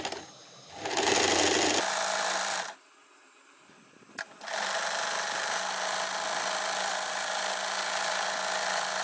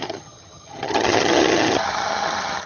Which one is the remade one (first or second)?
second